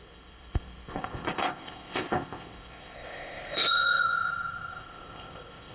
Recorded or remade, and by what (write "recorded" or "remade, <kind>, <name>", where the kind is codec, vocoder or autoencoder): remade, codec, ZipCodec